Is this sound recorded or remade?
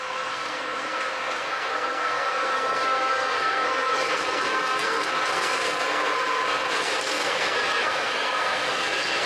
remade